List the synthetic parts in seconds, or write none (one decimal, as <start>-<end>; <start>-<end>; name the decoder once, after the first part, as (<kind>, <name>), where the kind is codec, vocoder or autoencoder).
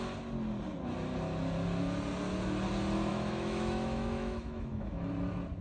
3.1-5.1 (autoencoder, DAC-VAE)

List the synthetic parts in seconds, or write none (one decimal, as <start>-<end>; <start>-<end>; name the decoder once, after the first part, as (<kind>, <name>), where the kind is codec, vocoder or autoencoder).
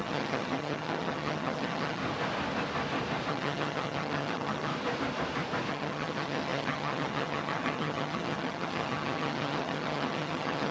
0.0-2.0 (vocoder, HiFi-GAN); 3.3-4.7; 5.7-10.7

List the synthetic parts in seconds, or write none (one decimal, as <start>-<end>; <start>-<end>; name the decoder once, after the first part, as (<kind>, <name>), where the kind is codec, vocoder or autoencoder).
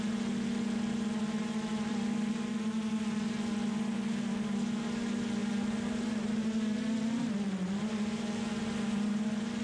1.7-2.3 (vocoder, BigVGAN v2); 5.4-6.2